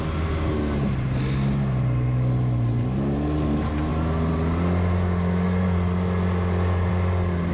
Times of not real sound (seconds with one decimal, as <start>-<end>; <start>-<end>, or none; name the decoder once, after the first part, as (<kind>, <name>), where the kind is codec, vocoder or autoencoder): none